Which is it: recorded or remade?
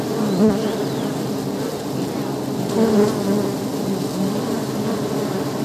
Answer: remade